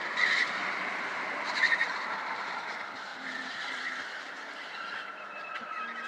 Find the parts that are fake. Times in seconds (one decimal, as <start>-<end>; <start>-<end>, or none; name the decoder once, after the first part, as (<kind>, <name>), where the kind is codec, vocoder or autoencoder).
0.4-2.5 (vocoder, BigVGAN v2); 3.1-4.3